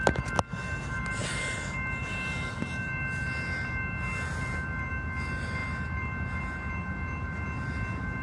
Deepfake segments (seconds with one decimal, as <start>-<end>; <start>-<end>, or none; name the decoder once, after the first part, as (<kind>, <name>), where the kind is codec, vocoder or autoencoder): none